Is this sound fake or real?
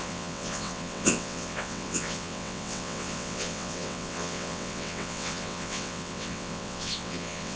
fake